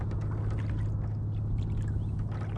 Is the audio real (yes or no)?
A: yes